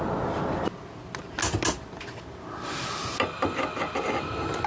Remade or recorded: recorded